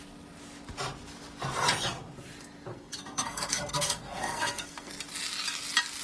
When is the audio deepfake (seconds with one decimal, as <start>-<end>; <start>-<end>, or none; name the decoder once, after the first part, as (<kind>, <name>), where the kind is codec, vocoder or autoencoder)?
2.7-4.9 (codec, SNAC)